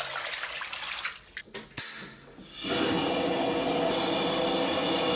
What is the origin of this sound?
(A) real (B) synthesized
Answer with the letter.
A